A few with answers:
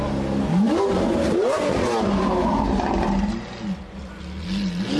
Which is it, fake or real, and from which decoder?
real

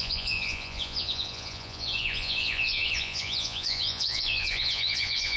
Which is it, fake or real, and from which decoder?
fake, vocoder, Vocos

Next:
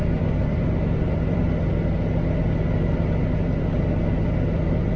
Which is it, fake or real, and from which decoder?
real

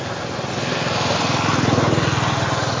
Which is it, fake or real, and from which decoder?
real